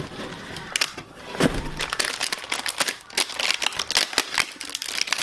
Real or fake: real